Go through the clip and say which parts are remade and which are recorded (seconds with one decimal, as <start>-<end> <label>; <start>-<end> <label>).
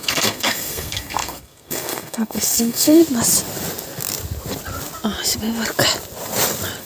0.0-3.0 remade; 3.0-6.8 recorded